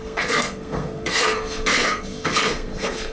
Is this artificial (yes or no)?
yes